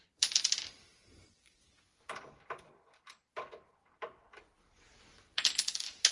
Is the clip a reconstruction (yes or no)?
yes